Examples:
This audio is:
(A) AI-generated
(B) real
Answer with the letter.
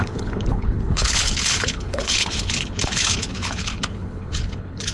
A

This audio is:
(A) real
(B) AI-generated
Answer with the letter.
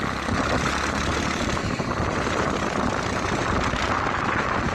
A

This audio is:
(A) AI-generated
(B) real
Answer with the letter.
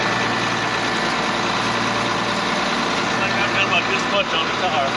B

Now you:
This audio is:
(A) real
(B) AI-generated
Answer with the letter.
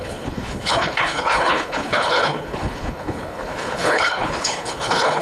B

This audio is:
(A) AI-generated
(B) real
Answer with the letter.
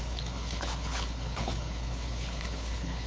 A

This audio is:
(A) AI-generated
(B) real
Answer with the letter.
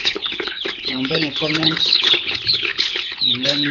A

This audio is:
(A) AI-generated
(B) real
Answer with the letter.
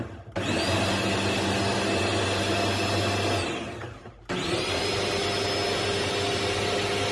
B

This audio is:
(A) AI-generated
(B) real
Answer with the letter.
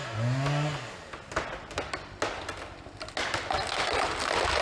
B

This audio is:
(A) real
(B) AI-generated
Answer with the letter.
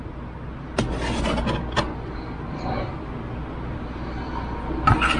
A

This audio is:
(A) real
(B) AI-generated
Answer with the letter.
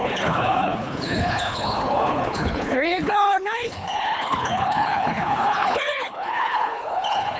B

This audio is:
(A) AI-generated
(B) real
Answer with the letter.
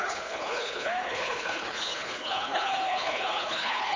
A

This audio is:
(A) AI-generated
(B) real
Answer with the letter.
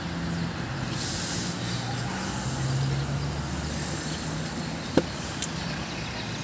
B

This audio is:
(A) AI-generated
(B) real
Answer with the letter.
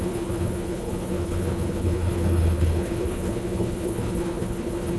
A